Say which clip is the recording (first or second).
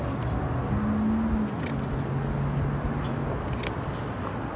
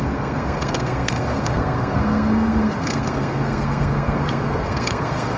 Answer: first